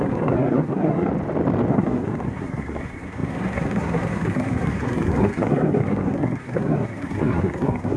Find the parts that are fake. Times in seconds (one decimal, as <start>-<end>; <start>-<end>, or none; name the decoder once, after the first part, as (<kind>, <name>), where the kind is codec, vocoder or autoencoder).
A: 0.0-1.1 (codec, SNAC); 1.7-8.0